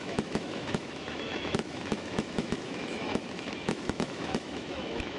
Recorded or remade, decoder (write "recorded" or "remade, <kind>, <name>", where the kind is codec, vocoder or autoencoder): remade, autoencoder, DAC-VAE